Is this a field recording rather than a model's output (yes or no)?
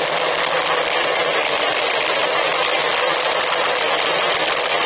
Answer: yes